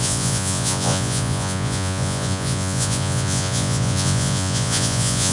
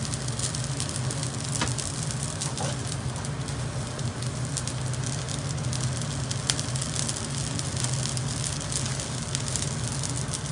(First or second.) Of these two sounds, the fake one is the first